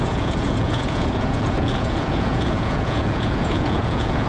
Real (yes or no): no